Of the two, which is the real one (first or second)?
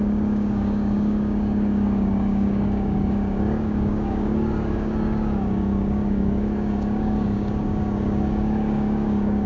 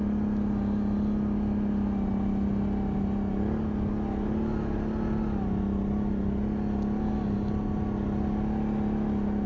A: second